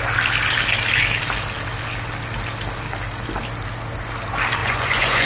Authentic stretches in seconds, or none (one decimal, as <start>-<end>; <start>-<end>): 0.0-4.6

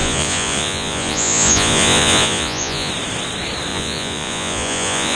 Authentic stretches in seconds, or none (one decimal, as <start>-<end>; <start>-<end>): 2.9-3.7

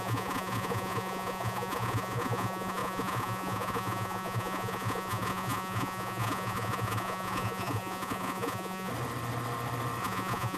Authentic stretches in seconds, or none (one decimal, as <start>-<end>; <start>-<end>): 8.9-10.0

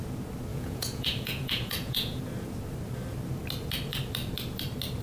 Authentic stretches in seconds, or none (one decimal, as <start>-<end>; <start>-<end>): 0.0-0.5; 2.2-5.0

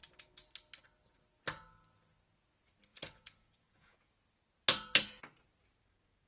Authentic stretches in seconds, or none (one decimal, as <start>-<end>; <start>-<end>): 0.0-2.9; 4.1-6.3

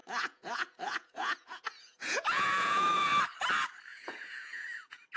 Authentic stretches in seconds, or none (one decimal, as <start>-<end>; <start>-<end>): 3.1-3.9

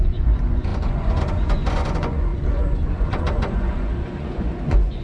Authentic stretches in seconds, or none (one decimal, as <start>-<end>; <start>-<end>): none